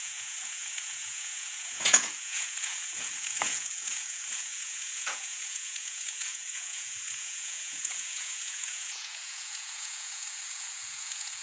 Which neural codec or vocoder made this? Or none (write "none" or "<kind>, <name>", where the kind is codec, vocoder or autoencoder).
vocoder, Vocos